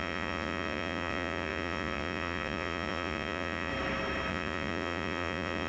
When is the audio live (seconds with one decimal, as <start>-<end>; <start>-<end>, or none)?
3.7-4.3